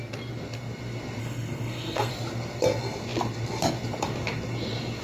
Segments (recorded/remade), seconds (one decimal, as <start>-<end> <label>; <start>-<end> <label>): 0.0-1.2 recorded; 1.2-2.1 remade; 2.1-5.0 recorded

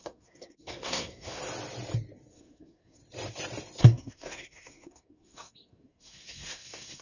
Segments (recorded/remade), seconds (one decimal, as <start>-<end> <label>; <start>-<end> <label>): 0.0-1.4 remade; 1.4-2.3 recorded; 2.3-3.0 remade; 3.0-3.8 recorded; 3.8-7.0 remade

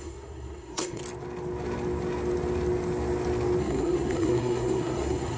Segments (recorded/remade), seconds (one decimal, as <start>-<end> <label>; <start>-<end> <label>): 0.0-1.0 remade; 1.0-3.6 recorded; 3.6-5.4 remade

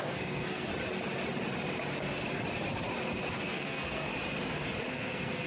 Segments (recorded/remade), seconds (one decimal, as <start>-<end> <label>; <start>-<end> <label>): 0.0-0.7 remade; 0.7-3.3 recorded; 3.3-4.1 remade; 4.1-4.9 recorded; 4.9-5.5 remade

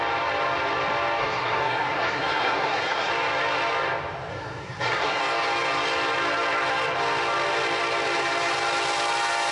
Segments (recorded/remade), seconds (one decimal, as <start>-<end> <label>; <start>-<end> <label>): 0.0-1.2 recorded; 1.2-3.1 remade; 3.1-4.3 recorded; 4.3-5.2 remade; 5.2-9.5 recorded

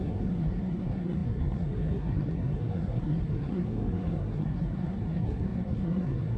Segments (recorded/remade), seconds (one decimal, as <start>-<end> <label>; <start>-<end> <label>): 0.0-6.4 remade

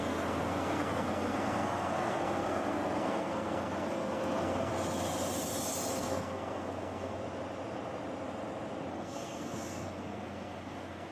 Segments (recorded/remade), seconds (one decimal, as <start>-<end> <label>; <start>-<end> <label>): 0.0-4.7 remade; 4.7-6.0 recorded; 6.0-7.2 remade; 7.2-8.9 recorded; 8.9-11.1 remade

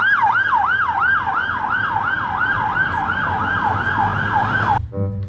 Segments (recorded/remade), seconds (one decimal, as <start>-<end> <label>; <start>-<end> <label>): 0.0-5.3 recorded